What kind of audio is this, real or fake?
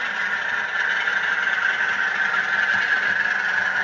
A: real